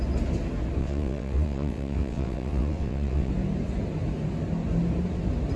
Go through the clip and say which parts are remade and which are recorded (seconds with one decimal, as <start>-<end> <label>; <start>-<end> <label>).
0.0-0.8 recorded; 0.8-3.3 remade; 3.3-5.6 recorded